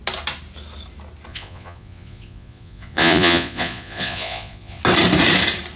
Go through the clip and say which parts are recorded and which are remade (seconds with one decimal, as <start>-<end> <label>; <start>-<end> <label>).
0.0-1.3 recorded; 1.3-4.8 remade; 4.8-5.8 recorded